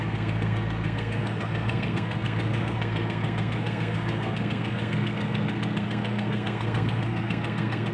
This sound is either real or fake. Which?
fake